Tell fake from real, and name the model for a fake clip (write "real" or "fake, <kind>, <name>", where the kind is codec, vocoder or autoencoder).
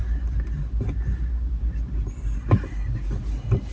real